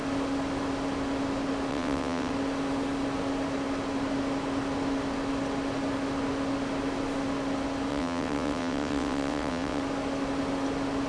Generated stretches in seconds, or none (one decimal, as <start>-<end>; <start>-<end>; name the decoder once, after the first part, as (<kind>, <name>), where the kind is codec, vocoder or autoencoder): 1.7-2.3 (vocoder, WaveNeXt); 7.9-9.8